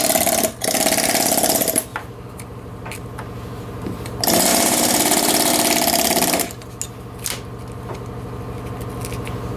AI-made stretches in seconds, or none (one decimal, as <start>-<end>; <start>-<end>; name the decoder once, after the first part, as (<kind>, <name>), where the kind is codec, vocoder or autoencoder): 1.9-4.1 (vocoder, BigVGAN v2); 4.5-5.5